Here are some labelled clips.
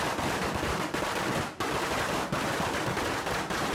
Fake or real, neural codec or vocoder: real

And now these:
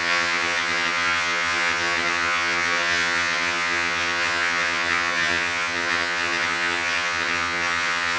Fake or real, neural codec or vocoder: fake, vocoder, HiFi-GAN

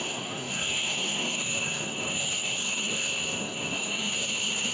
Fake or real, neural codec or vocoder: fake, codec, SNAC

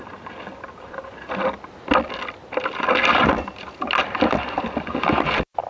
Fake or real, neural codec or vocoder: real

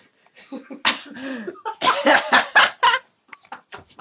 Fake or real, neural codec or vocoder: real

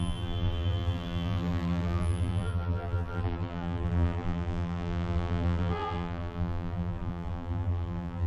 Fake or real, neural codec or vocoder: fake, vocoder, BigVGAN v2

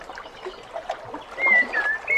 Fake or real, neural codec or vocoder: real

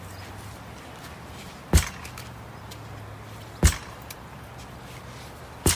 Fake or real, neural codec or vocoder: real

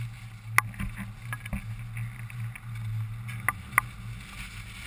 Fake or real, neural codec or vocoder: real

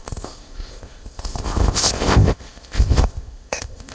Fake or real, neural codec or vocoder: fake, codec, ZipCodec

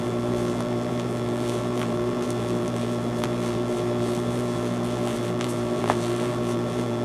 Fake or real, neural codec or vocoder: fake, vocoder, BigVGAN v2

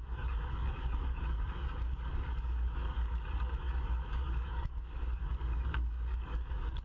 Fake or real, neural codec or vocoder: fake, codec, DAC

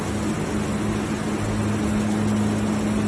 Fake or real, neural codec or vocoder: real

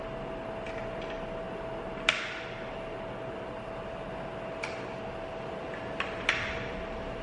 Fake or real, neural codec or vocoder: real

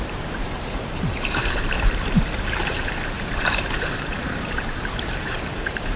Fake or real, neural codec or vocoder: fake, vocoder, BigVGAN v2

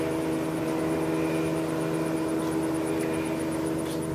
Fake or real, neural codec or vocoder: real